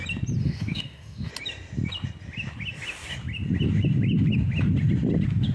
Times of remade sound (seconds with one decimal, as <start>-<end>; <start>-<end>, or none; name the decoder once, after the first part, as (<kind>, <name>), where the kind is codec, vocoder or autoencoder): 0.4-1.3 (autoencoder, DAC-VAE)